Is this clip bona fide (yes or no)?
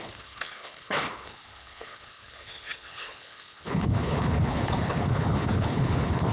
no